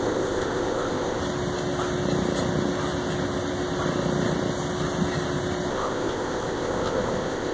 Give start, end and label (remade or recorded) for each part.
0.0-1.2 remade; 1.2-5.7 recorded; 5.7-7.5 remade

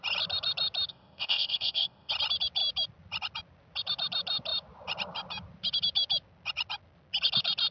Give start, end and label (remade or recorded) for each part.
0.0-0.9 recorded; 0.9-2.1 remade; 2.1-7.7 recorded

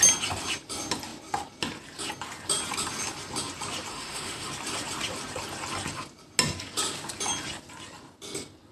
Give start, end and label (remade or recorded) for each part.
0.0-3.9 recorded; 3.9-4.5 remade; 4.5-8.7 recorded

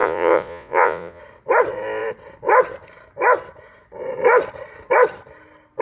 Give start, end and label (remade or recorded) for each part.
0.0-1.2 remade; 1.2-5.8 recorded

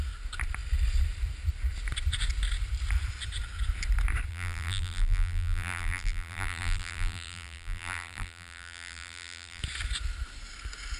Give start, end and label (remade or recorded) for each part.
0.0-4.3 recorded; 4.3-9.6 remade; 9.6-11.0 recorded